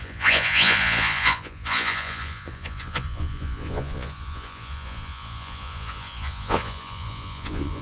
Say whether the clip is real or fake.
fake